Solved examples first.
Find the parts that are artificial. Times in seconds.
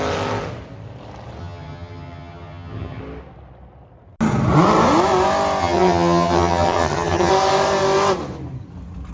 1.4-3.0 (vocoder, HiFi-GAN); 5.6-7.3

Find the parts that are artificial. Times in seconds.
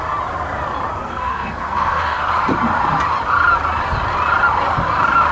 1.0-2.2 (codec, SNAC)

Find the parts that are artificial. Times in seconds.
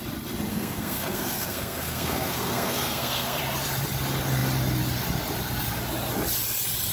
0.5-3.4 (codec, SNAC)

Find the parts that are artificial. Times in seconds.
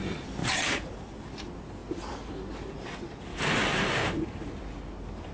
0.4-1.0 (vocoder, BigVGAN v2); 3.3-4.6